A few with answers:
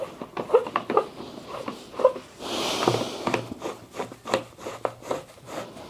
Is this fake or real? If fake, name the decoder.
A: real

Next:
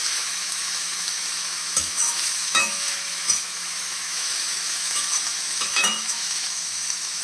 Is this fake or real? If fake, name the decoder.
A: fake, autoencoder, DAC-VAE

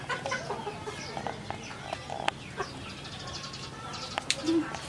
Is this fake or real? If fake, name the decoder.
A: real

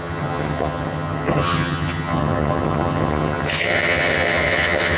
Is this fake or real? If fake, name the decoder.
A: fake, vocoder, HiFi-GAN